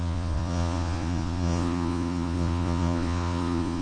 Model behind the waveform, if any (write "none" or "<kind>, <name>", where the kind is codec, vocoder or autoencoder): vocoder, Vocos